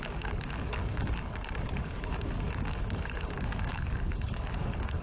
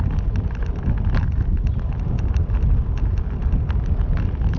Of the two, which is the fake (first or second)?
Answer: first